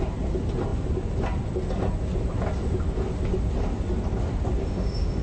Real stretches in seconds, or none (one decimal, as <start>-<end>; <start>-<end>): 0.0-4.6